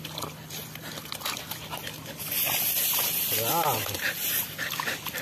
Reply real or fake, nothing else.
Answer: real